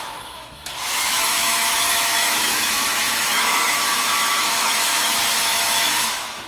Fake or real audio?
fake